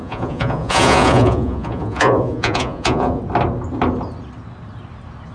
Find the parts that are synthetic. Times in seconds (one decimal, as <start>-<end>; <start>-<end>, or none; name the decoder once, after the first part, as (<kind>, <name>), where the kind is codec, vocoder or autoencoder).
0.0-3.2 (vocoder, Vocos)